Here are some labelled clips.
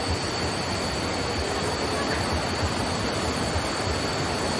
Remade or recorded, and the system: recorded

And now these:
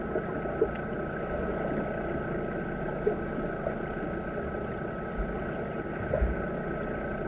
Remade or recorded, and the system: recorded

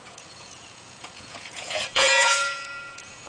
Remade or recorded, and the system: remade, vocoder, Vocos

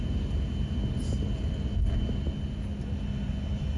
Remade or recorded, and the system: recorded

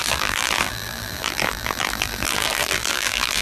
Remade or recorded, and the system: remade, vocoder, BigVGAN v2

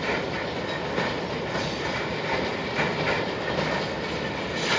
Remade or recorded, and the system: recorded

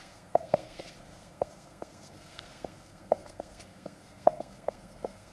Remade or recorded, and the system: remade, codec, SNAC